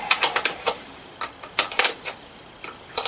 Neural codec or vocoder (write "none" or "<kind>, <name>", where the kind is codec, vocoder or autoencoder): vocoder, BigVGAN v2